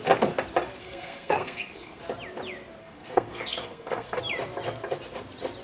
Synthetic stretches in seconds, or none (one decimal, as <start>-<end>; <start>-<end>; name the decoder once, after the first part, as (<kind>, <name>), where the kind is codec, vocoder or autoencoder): 0.8-2.0 (codec, SNAC); 2.8-4.2